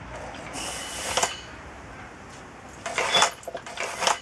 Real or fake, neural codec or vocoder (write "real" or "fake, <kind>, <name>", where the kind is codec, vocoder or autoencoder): real